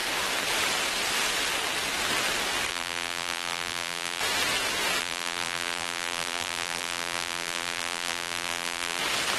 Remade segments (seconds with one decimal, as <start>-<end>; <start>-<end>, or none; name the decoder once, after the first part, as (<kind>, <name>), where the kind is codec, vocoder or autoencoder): 2.7-4.2 (vocoder, BigVGAN v2); 5.0-9.0